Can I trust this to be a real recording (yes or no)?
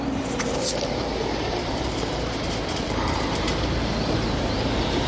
no